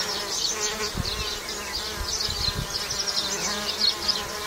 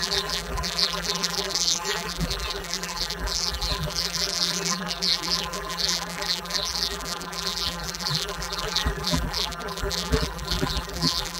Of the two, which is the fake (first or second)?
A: second